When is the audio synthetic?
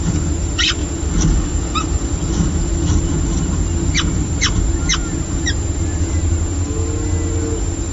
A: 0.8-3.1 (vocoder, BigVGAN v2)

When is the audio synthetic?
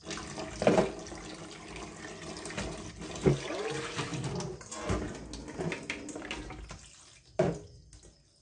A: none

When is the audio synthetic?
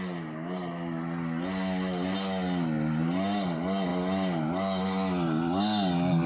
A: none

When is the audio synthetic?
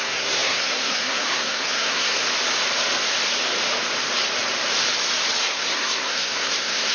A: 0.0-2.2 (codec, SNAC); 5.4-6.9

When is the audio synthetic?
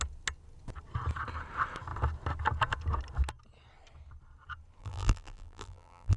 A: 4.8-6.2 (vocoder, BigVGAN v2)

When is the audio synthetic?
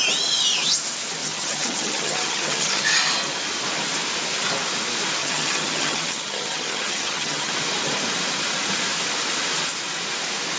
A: 1.2-2.8 (vocoder, HiFi-GAN); 5.2-7.5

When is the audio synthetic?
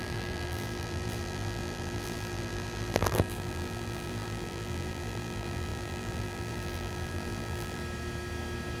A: 0.0-7.8 (vocoder, BigVGAN v2)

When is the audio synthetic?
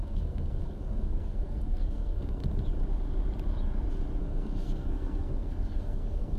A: 0.0-2.4 (codec, SNAC); 4.2-6.4